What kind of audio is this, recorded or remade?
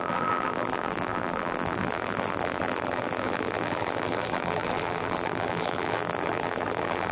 remade